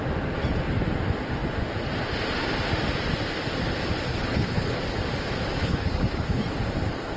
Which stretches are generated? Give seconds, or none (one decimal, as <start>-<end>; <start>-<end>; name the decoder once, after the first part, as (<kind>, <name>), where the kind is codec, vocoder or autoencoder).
4.1-4.8 (codec, HILCodec); 5.6-6.4